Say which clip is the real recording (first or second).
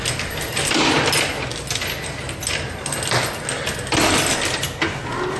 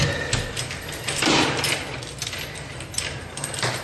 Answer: first